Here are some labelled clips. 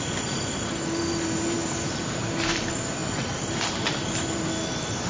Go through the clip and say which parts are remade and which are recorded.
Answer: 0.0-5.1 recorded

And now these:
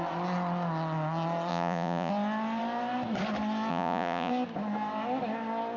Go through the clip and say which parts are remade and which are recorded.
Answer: 0.0-1.5 recorded; 1.5-2.1 remade; 2.1-3.7 recorded; 3.7-4.3 remade; 4.3-5.8 recorded

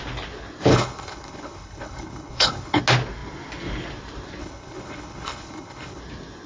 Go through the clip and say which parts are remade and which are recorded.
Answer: 0.0-0.7 recorded; 0.7-2.8 remade; 2.8-4.4 recorded; 4.4-6.0 remade; 6.0-6.5 recorded

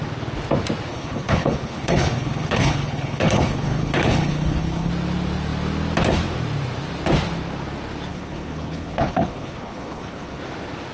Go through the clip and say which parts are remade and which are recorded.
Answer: 0.0-0.9 recorded; 0.9-4.9 remade; 4.9-8.1 recorded; 8.1-10.4 remade; 10.4-10.9 recorded

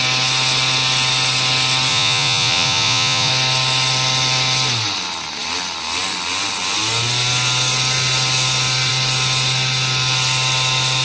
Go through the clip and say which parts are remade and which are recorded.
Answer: 0.0-1.9 recorded; 1.9-3.3 remade; 3.3-11.0 recorded

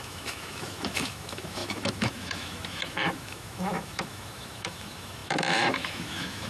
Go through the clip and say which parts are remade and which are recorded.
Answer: 0.0-6.5 remade

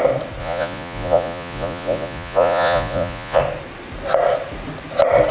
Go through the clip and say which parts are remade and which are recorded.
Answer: 0.0-0.4 recorded; 0.4-3.4 remade; 3.4-5.3 recorded